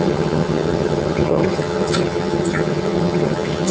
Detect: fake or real fake